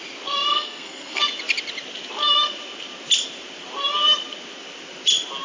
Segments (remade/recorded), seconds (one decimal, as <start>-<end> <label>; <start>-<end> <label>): 0.0-0.5 recorded; 0.5-1.2 remade; 1.2-5.4 recorded